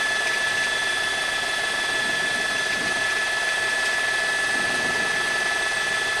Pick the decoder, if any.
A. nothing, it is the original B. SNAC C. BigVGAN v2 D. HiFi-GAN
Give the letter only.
A